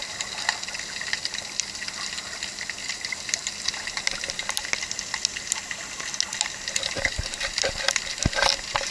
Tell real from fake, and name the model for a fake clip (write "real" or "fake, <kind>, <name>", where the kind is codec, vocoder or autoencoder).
real